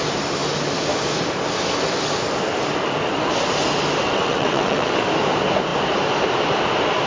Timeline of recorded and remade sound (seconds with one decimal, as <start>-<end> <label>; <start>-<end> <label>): 0.0-4.0 recorded; 4.0-5.0 remade; 5.0-7.1 recorded